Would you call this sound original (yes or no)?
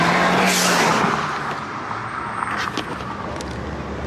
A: yes